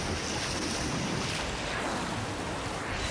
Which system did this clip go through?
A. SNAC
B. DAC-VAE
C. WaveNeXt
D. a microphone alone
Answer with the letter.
D